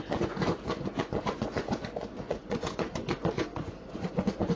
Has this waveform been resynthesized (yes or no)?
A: yes